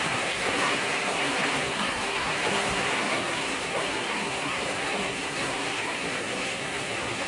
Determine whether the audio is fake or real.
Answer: fake